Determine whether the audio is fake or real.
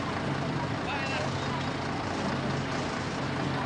real